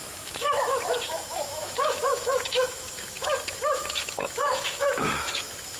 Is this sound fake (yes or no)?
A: yes